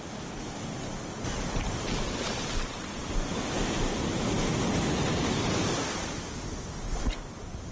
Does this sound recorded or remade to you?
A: recorded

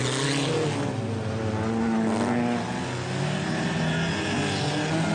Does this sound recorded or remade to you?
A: recorded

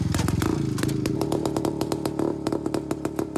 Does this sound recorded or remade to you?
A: recorded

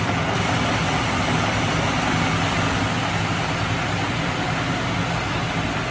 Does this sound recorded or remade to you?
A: recorded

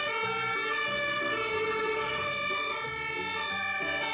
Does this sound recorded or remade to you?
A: recorded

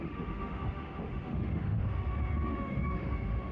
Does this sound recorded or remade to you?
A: remade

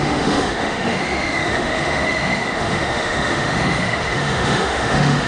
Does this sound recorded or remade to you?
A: remade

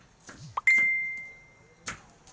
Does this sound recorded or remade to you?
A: recorded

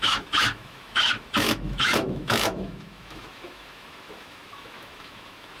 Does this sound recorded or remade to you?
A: remade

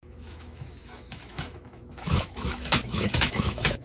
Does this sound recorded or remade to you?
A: remade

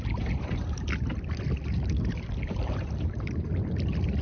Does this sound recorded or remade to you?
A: recorded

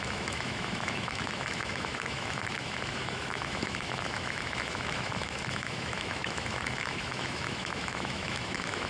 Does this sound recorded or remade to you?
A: remade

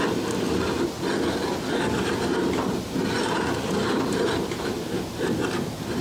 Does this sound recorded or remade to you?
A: recorded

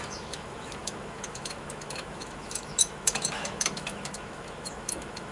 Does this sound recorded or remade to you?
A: remade